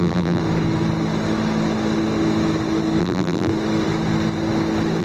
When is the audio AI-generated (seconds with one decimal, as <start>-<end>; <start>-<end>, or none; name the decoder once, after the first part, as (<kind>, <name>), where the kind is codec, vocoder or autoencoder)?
0.0-0.4 (vocoder, BigVGAN v2); 3.0-3.5